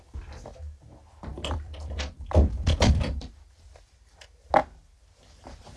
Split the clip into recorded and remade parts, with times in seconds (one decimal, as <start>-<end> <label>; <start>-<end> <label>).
0.0-1.3 recorded; 1.3-4.5 remade; 4.5-5.8 recorded